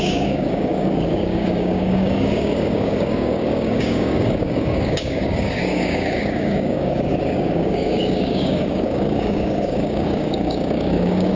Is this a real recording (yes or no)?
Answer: no